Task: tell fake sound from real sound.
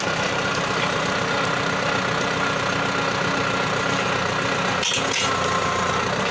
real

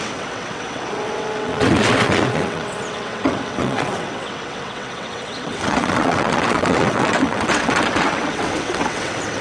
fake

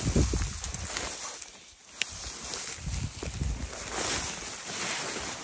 real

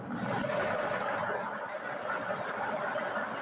real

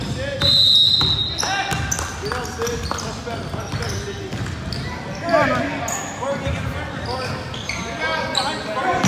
real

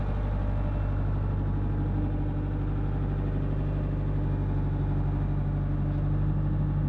real